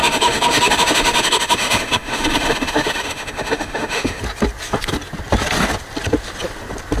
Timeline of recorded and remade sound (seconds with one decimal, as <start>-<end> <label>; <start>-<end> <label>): 0.0-4.2 remade; 4.2-7.0 recorded